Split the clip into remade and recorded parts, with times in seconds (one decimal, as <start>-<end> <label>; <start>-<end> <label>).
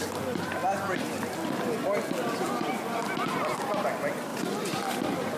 0.0-5.4 recorded